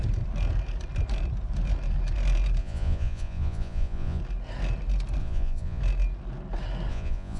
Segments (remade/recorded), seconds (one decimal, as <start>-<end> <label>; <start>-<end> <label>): 0.0-2.6 recorded; 2.6-4.2 remade; 4.2-5.2 recorded; 5.2-5.8 remade; 5.8-6.9 recorded; 6.9-7.4 remade